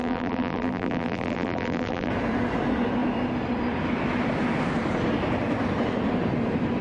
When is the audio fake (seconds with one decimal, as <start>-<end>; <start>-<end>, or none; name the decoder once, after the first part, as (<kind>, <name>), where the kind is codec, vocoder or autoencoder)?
0.0-2.1 (vocoder, BigVGAN v2)